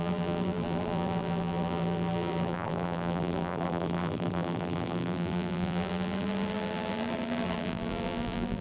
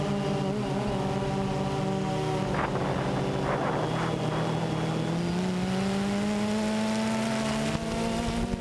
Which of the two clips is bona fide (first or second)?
second